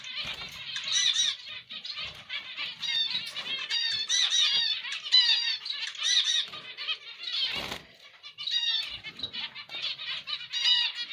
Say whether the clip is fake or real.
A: real